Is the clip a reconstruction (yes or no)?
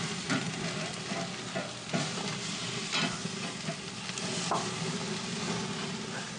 no